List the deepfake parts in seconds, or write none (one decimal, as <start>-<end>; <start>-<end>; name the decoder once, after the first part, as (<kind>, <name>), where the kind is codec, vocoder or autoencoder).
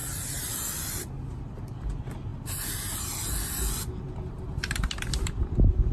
none